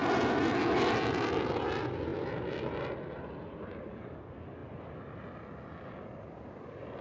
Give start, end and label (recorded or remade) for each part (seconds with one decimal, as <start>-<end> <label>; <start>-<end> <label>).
0.0-7.0 recorded